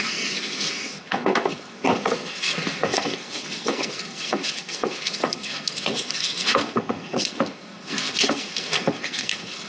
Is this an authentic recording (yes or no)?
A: no